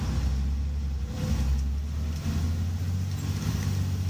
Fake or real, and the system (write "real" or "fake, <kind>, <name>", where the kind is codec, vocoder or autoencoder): real